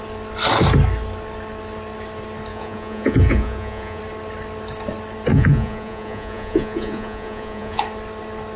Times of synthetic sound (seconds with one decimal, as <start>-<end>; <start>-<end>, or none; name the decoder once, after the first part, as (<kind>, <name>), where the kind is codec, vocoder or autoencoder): 2.5-4.0 (vocoder, Vocos); 5.3-7.8